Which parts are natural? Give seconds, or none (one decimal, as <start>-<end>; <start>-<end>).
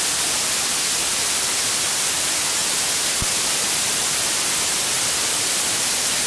0.0-6.3